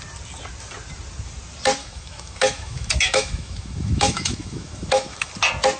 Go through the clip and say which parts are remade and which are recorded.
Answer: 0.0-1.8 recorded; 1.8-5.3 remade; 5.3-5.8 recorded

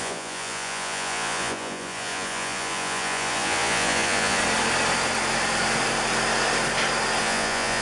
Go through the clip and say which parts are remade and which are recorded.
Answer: 0.0-4.4 remade; 4.4-7.2 recorded; 7.2-7.8 remade

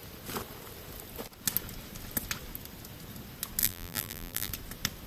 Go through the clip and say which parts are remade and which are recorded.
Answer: 0.0-3.6 recorded; 3.6-4.5 remade; 4.5-5.1 recorded

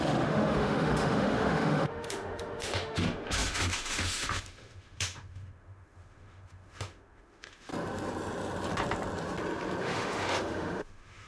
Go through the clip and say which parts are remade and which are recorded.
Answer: 0.0-7.7 remade; 7.7-9.8 recorded; 9.8-11.3 remade

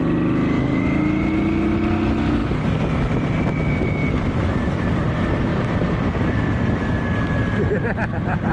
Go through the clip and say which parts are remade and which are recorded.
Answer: 0.0-2.4 recorded; 2.4-3.6 remade; 3.6-4.0 recorded; 4.0-5.1 remade; 5.1-5.5 recorded; 5.5-6.2 remade; 6.2-8.5 recorded

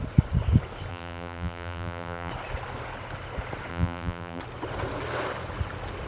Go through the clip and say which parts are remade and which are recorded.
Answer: 0.0-0.9 recorded; 0.9-2.3 remade; 2.3-3.7 recorded; 3.7-4.4 remade; 4.4-6.1 recorded

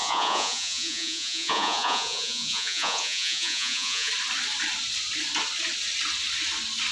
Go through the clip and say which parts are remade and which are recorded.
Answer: 0.0-4.1 remade; 4.1-6.9 recorded